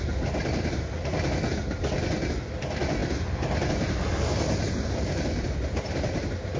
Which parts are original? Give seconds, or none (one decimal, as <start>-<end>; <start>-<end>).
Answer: 0.0-6.6